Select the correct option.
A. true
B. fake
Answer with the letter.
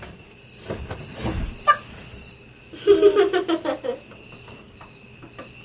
A